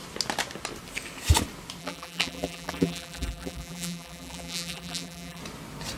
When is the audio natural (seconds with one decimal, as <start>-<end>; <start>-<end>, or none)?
0.0-1.8; 5.4-6.0